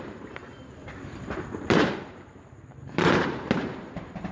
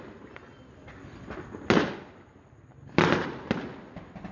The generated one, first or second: first